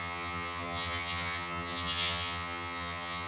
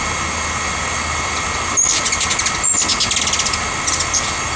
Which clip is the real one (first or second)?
second